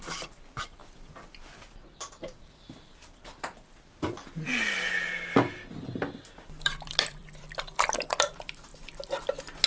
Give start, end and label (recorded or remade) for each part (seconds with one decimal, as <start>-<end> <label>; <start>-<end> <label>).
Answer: 0.0-4.5 remade; 4.5-6.2 recorded; 6.2-8.7 remade; 8.7-9.7 recorded